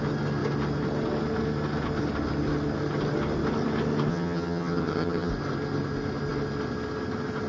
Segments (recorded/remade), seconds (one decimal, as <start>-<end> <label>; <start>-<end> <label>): 0.0-4.1 recorded; 4.1-5.3 remade; 5.3-7.5 recorded